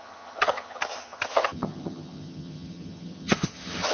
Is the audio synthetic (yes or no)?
yes